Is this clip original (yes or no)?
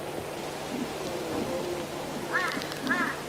no